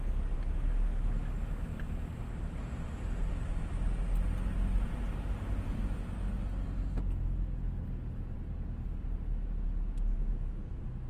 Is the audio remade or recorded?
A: recorded